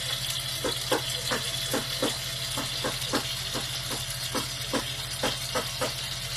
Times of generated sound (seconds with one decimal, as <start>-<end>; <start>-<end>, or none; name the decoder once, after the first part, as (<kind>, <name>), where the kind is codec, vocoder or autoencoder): none